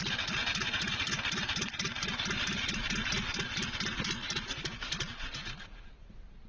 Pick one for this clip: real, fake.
real